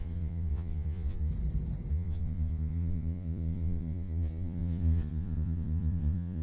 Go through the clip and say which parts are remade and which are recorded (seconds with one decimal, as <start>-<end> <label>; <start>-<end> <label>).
0.0-1.3 remade; 1.3-1.9 recorded; 1.9-6.4 remade